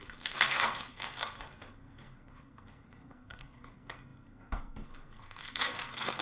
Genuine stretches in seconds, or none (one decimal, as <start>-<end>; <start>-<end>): none